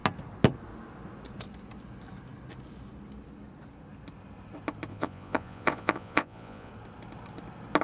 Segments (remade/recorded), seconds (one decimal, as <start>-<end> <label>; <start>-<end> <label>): 0.0-4.9 recorded; 4.9-6.7 remade; 6.7-7.8 recorded